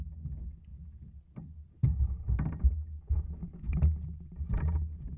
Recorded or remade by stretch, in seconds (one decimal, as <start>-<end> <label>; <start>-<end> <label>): 0.0-5.2 recorded